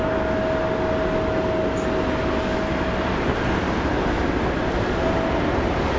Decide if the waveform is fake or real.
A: real